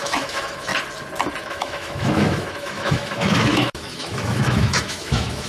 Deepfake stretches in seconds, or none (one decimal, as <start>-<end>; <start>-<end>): 0.0-0.7; 1.4-5.5